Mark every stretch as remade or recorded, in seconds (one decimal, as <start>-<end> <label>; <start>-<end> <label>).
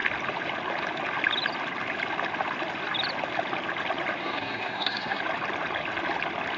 0.0-4.2 recorded; 4.2-5.2 remade; 5.2-6.6 recorded